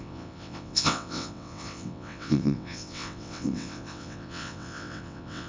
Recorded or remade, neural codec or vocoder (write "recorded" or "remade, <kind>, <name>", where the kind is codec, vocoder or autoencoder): remade, vocoder, WaveNeXt